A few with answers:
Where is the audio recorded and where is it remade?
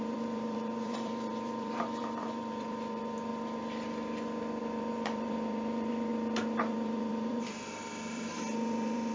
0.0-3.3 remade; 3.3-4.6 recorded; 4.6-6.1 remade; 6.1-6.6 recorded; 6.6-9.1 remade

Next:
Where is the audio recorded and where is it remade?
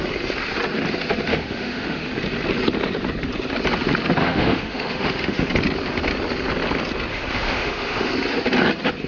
0.0-1.3 recorded; 1.3-2.1 remade; 2.1-4.2 recorded; 4.2-5.5 remade; 5.5-7.1 recorded; 7.1-8.1 remade; 8.1-9.1 recorded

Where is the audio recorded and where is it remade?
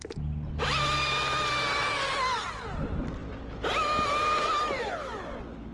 0.0-5.7 recorded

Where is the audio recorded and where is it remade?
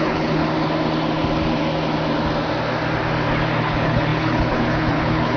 0.0-0.4 remade; 0.4-3.6 recorded; 3.6-5.4 remade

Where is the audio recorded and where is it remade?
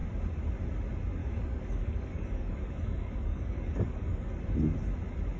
0.0-1.2 recorded; 1.2-4.4 remade; 4.4-5.4 recorded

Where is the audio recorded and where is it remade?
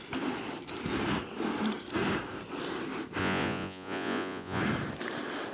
0.0-3.2 recorded; 3.2-4.6 remade; 4.6-5.5 recorded